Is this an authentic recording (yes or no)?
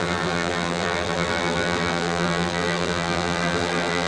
no